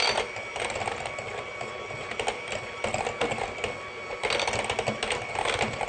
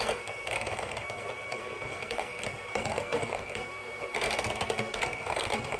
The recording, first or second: first